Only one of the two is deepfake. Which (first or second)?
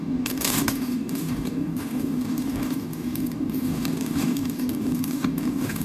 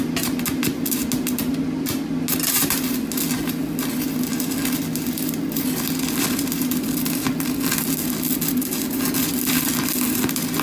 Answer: first